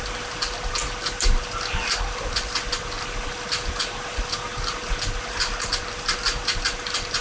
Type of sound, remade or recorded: recorded